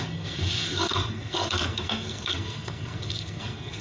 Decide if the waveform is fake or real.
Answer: fake